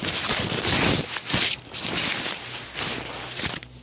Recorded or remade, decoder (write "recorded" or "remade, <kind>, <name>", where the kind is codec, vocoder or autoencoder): recorded